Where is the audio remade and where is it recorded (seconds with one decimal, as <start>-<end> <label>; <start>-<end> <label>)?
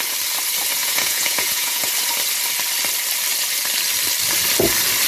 0.0-0.8 recorded; 0.8-1.9 remade; 1.9-5.1 recorded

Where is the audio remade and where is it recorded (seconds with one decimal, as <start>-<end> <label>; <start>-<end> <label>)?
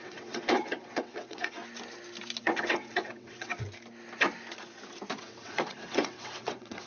0.0-1.6 remade; 1.6-2.4 recorded; 2.4-3.5 remade; 3.5-5.2 recorded; 5.2-6.9 remade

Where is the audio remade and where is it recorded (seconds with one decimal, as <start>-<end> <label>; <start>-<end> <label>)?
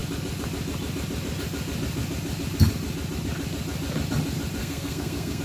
0.0-4.6 recorded; 4.6-5.4 remade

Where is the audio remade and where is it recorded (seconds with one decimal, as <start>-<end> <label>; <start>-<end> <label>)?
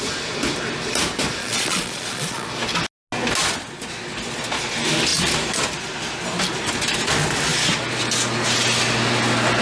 0.0-1.4 recorded; 1.4-2.5 remade; 2.5-9.6 recorded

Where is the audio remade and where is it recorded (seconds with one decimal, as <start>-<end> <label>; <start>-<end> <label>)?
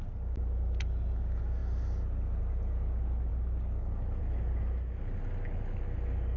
0.0-6.4 recorded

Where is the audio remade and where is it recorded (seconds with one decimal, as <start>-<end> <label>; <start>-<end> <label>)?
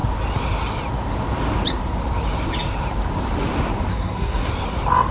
0.0-3.9 recorded; 3.9-4.5 remade; 4.5-5.1 recorded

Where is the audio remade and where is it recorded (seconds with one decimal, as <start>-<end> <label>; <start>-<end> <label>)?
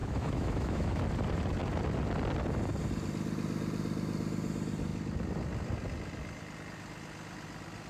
0.0-1.0 remade; 1.0-7.9 recorded